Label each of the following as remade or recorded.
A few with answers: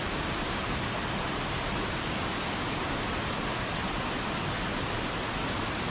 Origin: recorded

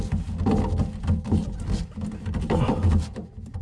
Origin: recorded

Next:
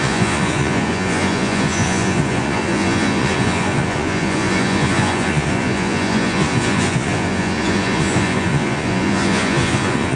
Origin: remade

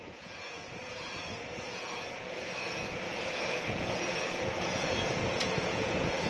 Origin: remade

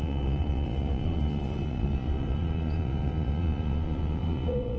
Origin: remade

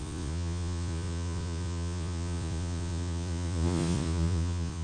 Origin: remade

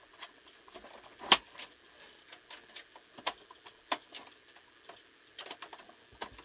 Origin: recorded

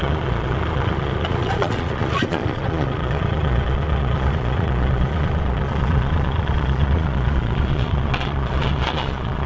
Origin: remade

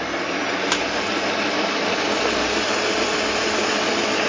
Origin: recorded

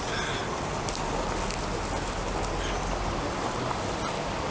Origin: recorded